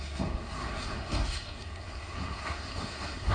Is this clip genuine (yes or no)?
no